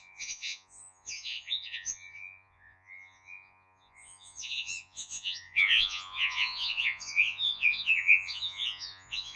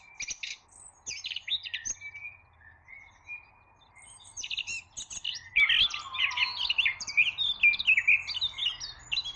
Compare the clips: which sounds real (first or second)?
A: second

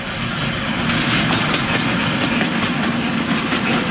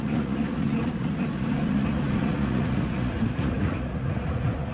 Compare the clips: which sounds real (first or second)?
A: first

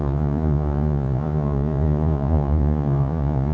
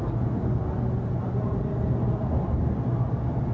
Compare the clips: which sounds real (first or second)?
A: second